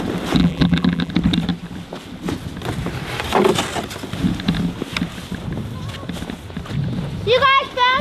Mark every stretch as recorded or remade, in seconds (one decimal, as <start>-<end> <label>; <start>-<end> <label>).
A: 0.0-0.4 recorded; 0.4-1.1 remade; 1.1-8.0 recorded